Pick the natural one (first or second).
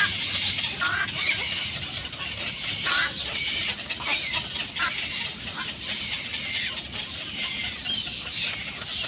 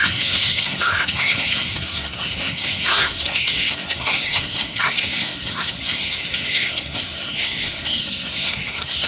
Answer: first